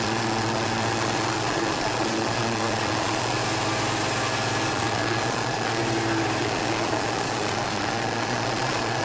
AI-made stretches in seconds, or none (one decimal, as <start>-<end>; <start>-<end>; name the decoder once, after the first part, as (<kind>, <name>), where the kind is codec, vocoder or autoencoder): 0.0-3.4 (vocoder, Vocos); 4.7-5.8; 6.4-9.0